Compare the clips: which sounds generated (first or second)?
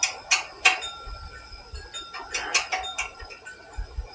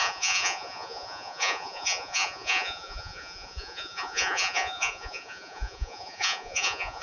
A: second